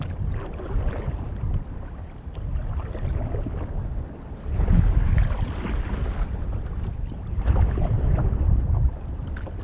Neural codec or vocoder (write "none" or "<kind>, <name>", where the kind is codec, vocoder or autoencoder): none